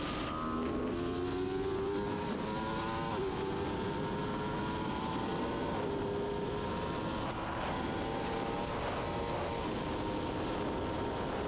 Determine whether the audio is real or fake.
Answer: real